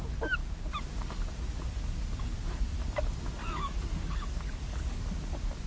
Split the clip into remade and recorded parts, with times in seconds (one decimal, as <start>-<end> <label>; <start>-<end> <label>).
0.0-3.4 recorded; 3.4-5.0 remade; 5.0-5.7 recorded